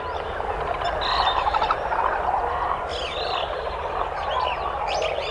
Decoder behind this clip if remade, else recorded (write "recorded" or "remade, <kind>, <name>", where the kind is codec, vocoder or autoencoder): recorded